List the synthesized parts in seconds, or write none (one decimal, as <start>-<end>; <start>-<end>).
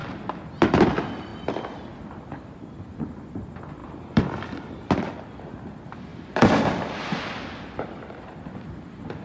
0.0-0.7; 1.3-3.4; 3.8-4.9; 6.1-7.2